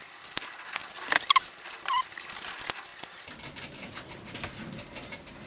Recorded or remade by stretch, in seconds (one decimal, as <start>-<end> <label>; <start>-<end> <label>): 0.0-5.5 recorded